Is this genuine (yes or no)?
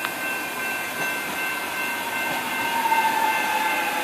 yes